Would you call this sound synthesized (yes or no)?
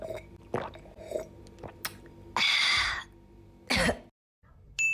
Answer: no